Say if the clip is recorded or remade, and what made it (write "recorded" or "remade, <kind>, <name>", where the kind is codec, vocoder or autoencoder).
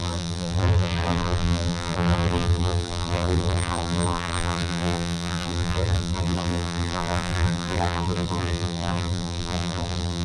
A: remade, vocoder, BigVGAN v2